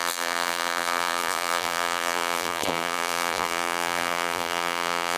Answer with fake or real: fake